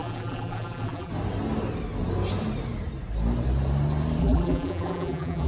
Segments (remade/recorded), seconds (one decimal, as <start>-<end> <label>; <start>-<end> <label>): 0.0-1.1 remade; 1.1-4.2 recorded; 4.2-5.5 remade